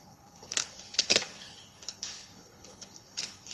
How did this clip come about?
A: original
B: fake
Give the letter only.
B